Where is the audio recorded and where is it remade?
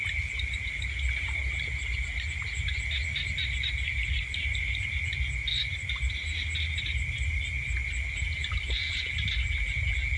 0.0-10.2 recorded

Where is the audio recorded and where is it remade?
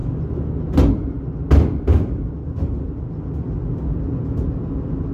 0.0-5.1 recorded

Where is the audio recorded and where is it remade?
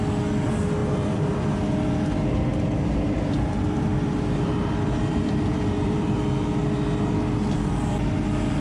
0.0-0.8 recorded; 0.8-1.3 remade; 1.3-2.5 recorded; 2.5-6.2 remade; 6.2-8.6 recorded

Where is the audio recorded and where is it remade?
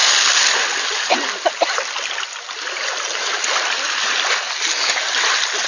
0.0-5.7 recorded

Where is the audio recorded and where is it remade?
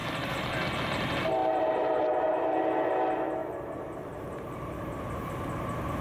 0.0-1.4 recorded; 1.4-2.6 remade; 2.6-3.4 recorded; 3.4-5.0 remade; 5.0-6.0 recorded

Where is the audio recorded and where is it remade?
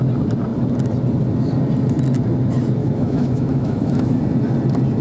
0.0-2.8 recorded; 2.8-4.2 remade; 4.2-5.0 recorded